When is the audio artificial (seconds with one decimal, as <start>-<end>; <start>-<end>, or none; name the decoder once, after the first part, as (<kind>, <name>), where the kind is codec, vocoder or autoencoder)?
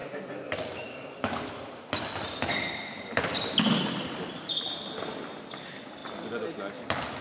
none